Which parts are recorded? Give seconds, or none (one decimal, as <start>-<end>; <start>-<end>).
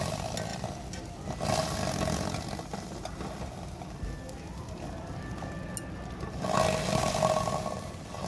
0.0-2.7; 5.2-8.3